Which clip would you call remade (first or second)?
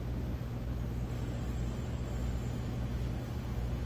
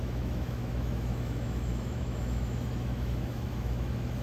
second